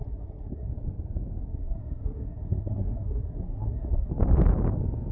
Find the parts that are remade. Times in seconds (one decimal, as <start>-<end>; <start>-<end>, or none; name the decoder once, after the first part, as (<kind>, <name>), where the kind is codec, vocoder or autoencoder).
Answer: 0.0-0.7 (codec, SNAC); 1.4-4.1